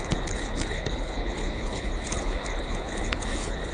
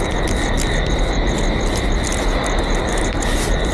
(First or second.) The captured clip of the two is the second